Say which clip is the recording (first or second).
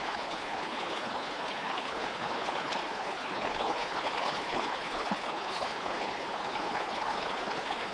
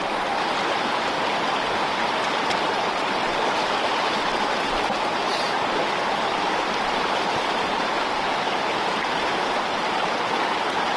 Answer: second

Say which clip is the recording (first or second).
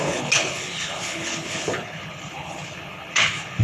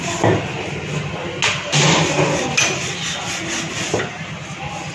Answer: second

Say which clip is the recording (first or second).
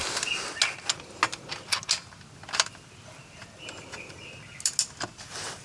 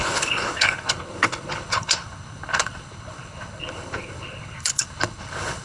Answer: first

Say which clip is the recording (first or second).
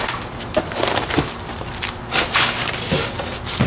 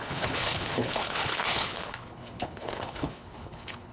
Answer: first